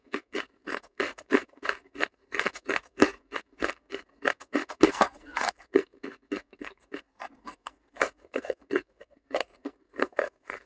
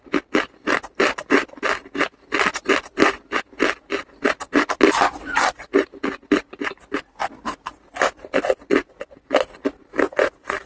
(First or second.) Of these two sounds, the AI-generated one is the first